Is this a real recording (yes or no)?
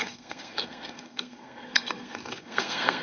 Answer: no